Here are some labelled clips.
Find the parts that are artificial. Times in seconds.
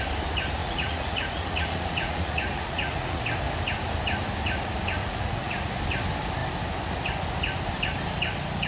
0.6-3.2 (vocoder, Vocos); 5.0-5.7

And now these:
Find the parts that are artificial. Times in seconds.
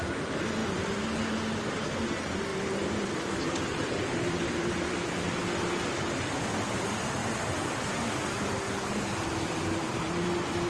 0.6-1.2 (vocoder, BigVGAN v2); 2.5-6.1; 7.2-10.7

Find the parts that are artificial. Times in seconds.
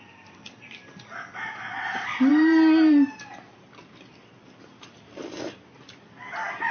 none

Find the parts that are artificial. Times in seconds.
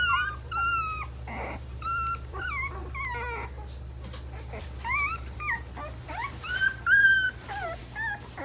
0.0-2.8 (vocoder, BigVGAN v2); 4.6-7.8